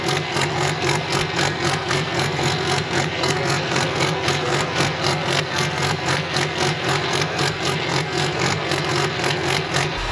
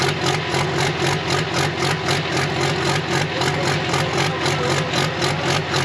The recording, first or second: second